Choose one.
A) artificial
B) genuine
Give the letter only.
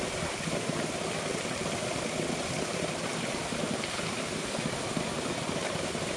B